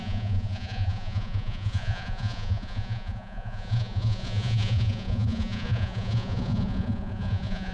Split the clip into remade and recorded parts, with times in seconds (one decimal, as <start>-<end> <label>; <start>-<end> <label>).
0.0-7.7 remade